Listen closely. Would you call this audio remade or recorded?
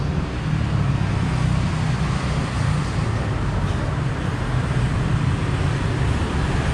recorded